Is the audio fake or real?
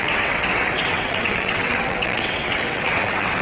fake